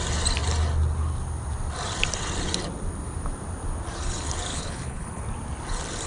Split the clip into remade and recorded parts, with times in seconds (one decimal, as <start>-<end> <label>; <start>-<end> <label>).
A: 0.0-4.5 recorded; 4.5-5.2 remade; 5.2-6.1 recorded